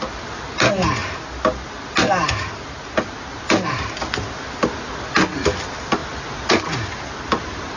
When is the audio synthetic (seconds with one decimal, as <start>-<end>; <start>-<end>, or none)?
none